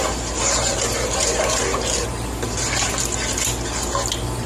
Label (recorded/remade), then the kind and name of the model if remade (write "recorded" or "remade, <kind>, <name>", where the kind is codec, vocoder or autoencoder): recorded